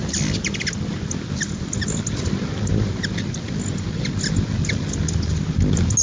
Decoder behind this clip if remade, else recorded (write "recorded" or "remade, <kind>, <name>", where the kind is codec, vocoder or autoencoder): recorded